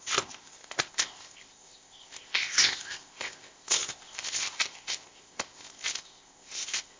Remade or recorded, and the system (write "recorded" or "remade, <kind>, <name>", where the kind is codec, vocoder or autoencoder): remade, codec, ZipCodec